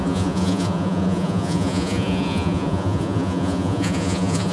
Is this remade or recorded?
remade